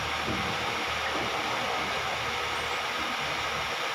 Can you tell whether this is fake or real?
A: real